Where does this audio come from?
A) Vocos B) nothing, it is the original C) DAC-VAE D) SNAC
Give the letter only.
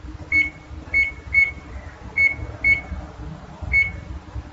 B